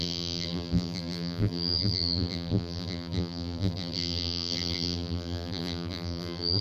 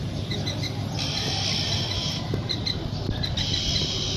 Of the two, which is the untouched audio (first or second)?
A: second